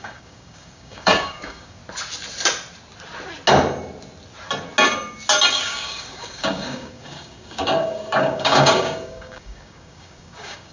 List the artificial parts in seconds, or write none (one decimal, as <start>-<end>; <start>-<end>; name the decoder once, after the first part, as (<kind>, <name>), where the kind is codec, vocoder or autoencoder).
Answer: 0.0-1.8 (codec, DAC); 5.5-10.7